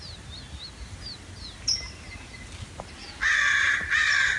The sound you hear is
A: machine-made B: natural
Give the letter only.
B